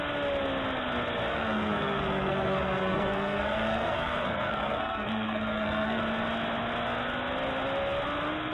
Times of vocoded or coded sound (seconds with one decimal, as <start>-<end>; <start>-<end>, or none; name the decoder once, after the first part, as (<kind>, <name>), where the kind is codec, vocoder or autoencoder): 1.3-6.0 (codec, SNAC)